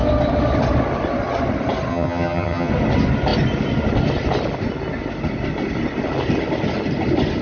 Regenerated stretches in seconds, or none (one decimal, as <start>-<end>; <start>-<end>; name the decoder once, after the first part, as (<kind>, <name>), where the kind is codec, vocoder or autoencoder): 1.9-2.7 (vocoder, HiFi-GAN)